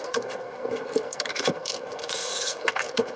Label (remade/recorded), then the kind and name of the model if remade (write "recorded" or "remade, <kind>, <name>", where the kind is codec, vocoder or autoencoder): remade, codec, SNAC